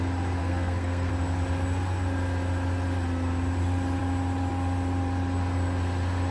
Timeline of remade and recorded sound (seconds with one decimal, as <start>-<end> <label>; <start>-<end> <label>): 0.0-0.4 recorded; 0.4-1.1 remade; 1.1-6.3 recorded